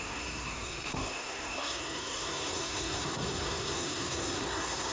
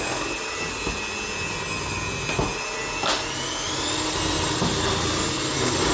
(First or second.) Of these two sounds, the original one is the second